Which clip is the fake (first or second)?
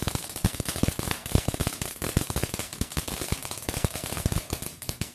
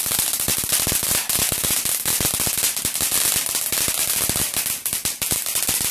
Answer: first